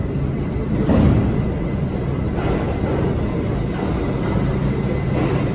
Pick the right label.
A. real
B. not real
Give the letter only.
A